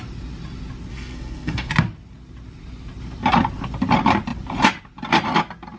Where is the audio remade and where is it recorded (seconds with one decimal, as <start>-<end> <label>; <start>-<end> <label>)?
0.0-0.9 recorded; 0.9-1.7 remade; 1.7-5.8 recorded